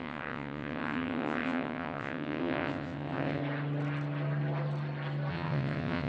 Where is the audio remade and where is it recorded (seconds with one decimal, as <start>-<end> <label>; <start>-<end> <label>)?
0.0-3.4 remade; 3.4-5.3 recorded; 5.3-6.1 remade